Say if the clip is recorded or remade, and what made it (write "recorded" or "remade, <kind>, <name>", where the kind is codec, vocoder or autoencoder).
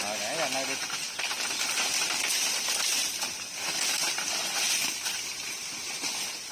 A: recorded